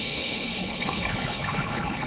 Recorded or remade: remade